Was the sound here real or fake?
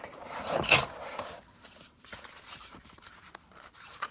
fake